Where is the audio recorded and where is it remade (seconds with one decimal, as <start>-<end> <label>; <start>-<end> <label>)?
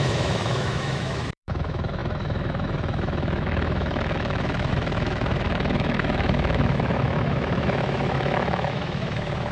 0.0-9.5 remade